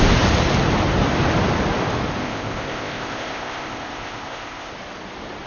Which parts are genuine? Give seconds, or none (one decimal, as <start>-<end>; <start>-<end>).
0.0-2.2; 4.7-5.5